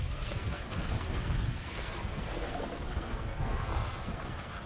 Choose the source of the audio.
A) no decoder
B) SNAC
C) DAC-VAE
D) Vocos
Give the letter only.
B